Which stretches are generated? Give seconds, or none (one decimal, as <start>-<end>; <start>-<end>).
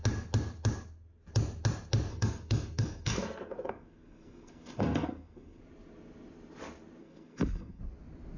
2.1-5.6; 7.0-7.8